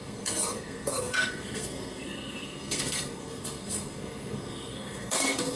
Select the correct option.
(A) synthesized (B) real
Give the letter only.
A